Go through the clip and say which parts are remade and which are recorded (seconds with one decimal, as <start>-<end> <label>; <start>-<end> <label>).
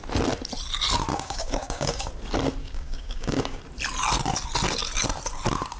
0.0-1.1 recorded; 1.1-2.1 remade; 2.1-2.6 recorded; 2.6-3.6 remade; 3.6-5.8 recorded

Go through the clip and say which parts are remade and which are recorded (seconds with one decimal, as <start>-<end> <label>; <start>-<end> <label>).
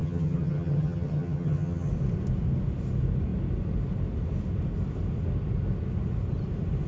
0.0-1.9 remade; 1.9-6.9 recorded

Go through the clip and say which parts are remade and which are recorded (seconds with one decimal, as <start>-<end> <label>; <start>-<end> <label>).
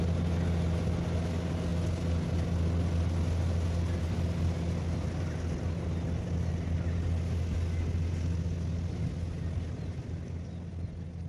0.0-11.3 recorded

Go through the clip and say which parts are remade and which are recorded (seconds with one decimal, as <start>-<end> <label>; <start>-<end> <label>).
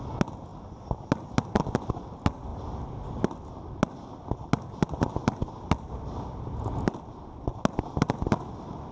0.0-8.9 recorded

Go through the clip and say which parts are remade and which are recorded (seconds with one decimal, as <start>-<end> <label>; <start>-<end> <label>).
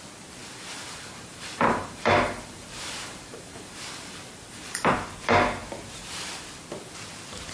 0.0-0.4 recorded; 0.4-4.9 remade; 4.9-7.5 recorded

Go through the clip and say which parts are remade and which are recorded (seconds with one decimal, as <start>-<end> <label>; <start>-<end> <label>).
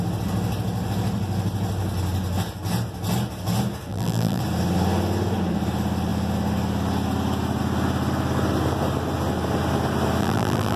0.0-3.9 recorded; 3.9-4.4 remade; 4.4-10.2 recorded; 10.2-10.8 remade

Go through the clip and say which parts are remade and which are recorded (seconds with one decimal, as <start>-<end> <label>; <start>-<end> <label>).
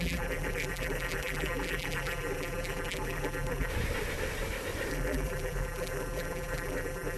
0.0-3.7 remade; 3.7-4.9 recorded; 4.9-7.2 remade